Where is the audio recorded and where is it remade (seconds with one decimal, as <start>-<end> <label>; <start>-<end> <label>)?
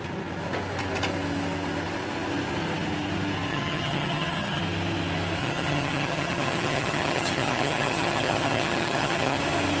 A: 0.0-3.5 recorded; 3.5-4.6 remade; 4.6-5.4 recorded; 5.4-9.4 remade; 9.4-9.8 recorded